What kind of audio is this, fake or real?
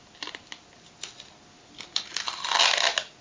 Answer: real